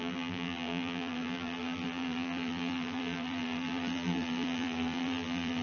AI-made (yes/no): yes